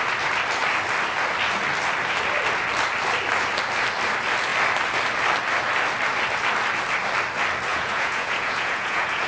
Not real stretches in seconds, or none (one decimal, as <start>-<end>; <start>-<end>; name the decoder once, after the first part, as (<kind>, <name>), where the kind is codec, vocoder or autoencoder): 7.7-9.3 (vocoder, Vocos)